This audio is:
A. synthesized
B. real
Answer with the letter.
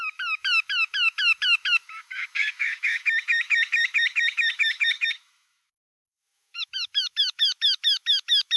A